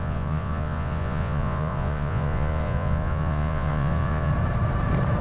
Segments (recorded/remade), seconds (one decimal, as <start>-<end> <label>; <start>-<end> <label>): 0.0-4.3 remade; 4.3-5.2 recorded